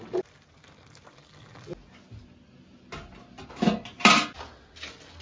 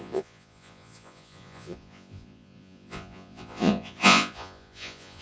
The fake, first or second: second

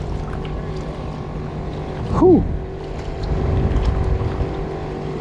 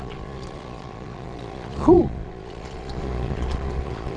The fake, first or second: second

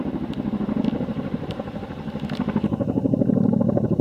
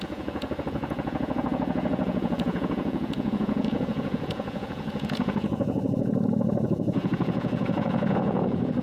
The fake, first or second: second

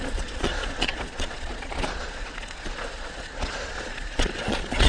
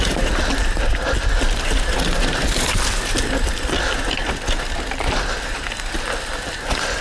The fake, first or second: first